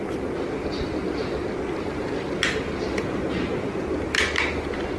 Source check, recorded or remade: recorded